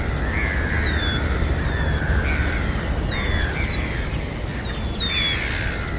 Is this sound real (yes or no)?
yes